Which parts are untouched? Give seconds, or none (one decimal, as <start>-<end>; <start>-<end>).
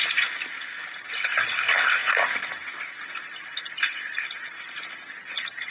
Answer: 1.1-5.7